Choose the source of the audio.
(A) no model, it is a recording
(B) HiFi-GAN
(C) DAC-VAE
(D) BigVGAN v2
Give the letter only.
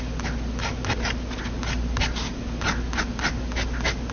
A